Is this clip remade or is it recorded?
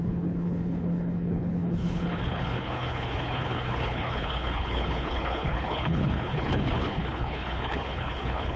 remade